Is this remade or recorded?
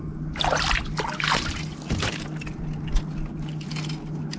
recorded